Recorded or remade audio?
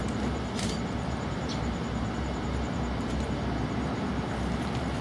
remade